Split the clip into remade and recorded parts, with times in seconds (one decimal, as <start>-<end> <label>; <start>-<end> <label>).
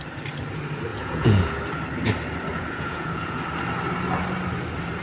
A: 0.0-0.9 recorded; 0.9-1.5 remade; 1.5-2.5 recorded; 2.5-3.4 remade; 3.4-5.0 recorded